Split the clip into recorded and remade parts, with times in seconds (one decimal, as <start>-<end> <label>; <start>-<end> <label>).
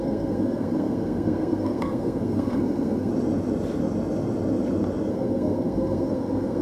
0.0-3.1 remade; 3.1-5.1 recorded; 5.1-6.6 remade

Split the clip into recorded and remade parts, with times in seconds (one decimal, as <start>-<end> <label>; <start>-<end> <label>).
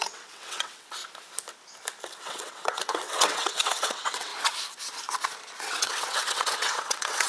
0.0-1.0 remade; 1.0-2.2 recorded; 2.2-4.3 remade; 4.3-5.6 recorded; 5.6-7.3 remade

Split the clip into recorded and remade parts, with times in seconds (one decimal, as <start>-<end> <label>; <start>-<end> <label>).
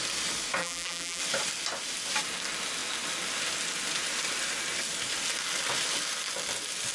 0.0-0.6 recorded; 0.6-1.2 remade; 1.2-6.9 recorded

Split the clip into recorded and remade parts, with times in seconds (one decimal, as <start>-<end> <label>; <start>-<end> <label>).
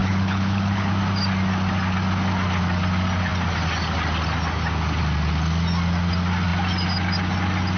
0.0-0.9 remade; 0.9-7.8 recorded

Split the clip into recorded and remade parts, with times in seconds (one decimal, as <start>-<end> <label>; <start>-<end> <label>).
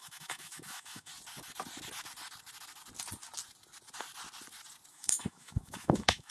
0.0-1.1 remade; 1.1-4.9 recorded; 4.9-6.3 remade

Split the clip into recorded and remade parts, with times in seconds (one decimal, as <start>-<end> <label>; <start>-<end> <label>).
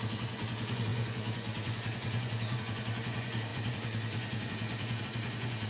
0.0-5.7 remade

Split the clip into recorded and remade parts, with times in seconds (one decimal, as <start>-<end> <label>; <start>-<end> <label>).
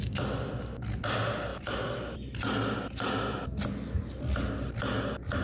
0.0-5.4 recorded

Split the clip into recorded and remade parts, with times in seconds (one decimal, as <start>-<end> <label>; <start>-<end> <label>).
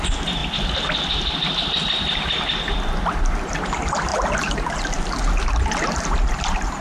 0.0-6.8 recorded